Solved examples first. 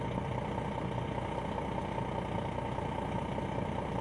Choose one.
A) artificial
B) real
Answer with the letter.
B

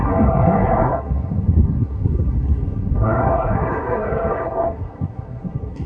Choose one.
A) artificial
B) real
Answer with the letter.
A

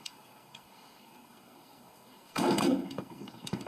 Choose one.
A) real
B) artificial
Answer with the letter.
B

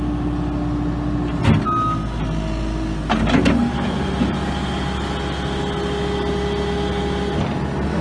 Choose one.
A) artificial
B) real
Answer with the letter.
B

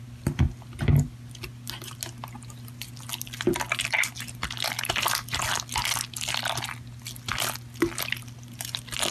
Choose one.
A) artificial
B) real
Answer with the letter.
B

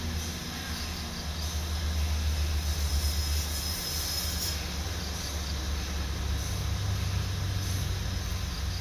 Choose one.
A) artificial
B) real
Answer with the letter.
B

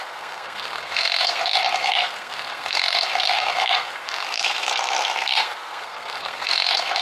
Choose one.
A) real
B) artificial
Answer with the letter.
B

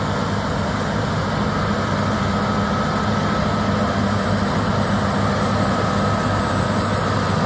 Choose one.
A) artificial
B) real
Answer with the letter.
B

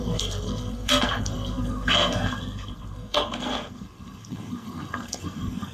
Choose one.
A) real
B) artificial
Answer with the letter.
B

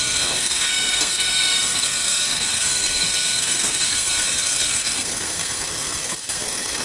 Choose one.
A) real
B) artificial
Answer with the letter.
B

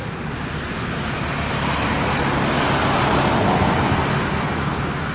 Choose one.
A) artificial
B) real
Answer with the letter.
B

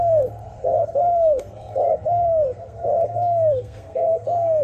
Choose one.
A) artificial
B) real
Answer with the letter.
A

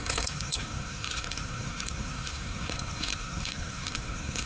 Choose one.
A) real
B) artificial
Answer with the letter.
B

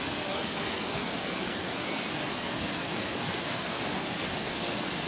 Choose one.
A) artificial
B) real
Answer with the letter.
A